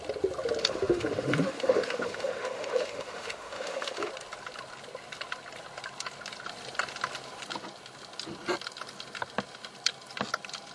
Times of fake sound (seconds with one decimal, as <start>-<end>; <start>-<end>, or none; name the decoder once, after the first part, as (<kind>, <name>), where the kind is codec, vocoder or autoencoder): 0.6-4.1 (autoencoder, DAC-VAE)